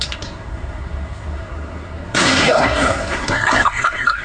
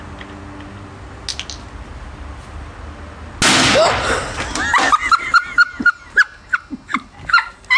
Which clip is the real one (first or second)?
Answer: second